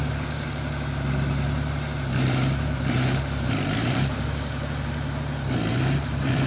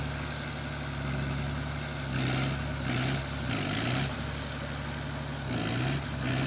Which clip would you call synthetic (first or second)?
first